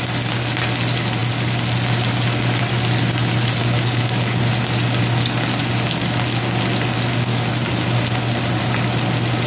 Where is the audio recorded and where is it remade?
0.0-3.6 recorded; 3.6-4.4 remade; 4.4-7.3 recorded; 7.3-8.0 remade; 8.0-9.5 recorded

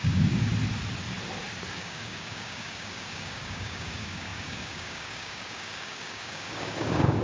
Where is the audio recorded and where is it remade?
0.0-0.5 remade; 0.5-1.7 recorded; 1.7-7.2 remade

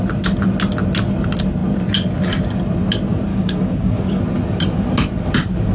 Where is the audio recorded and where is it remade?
0.0-3.3 recorded; 3.3-4.2 remade; 4.2-5.7 recorded

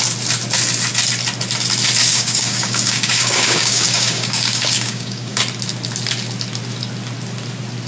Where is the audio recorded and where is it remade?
0.0-2.0 recorded; 2.0-5.4 remade; 5.4-7.9 recorded

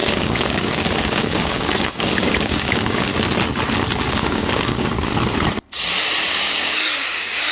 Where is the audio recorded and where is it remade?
0.0-3.1 remade; 3.1-4.1 recorded; 4.1-5.1 remade; 5.1-6.3 recorded; 6.3-7.5 remade

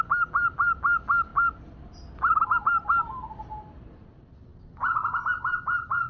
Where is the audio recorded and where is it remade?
0.0-6.1 recorded